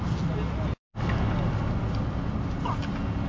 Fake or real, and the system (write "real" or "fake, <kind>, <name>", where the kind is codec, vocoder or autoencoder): real